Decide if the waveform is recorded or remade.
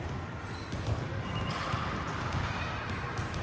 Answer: recorded